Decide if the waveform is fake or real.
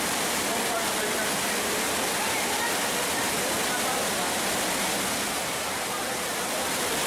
real